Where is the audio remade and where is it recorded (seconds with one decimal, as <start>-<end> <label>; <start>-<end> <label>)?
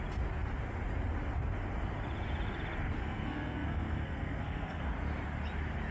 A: 0.0-3.0 recorded; 3.0-4.9 remade; 4.9-5.9 recorded